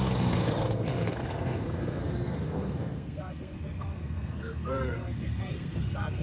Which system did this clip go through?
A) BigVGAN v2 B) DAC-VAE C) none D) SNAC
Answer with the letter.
D